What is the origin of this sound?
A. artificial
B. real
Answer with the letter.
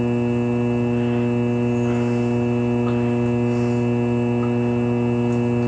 B